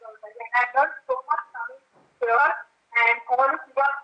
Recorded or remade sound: recorded